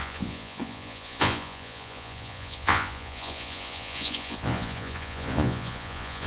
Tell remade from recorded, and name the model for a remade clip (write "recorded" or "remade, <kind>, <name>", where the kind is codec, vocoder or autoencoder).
remade, vocoder, Vocos